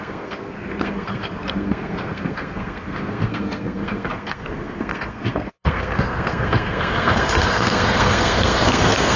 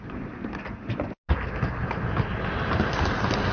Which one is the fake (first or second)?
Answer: first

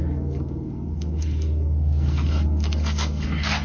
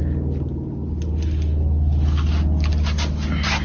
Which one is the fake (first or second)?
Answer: first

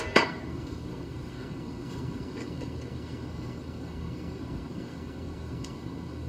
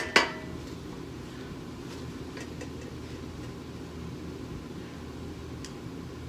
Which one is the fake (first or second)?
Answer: first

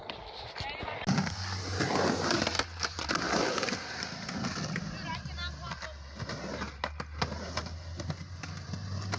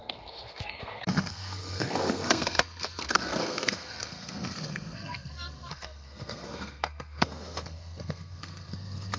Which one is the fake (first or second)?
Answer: second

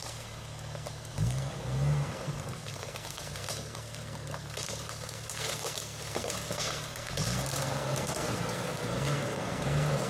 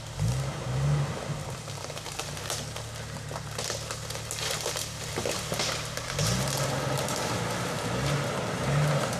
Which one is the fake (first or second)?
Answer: first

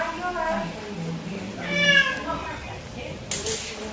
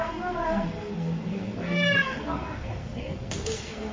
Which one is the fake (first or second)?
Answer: second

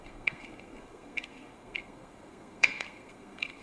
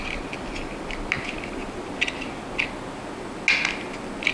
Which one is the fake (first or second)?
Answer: first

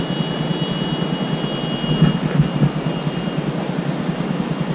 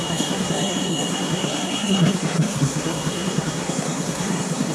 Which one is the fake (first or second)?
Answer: second